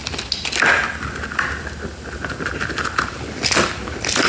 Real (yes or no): yes